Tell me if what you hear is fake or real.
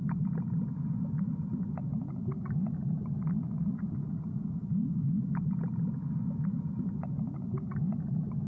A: real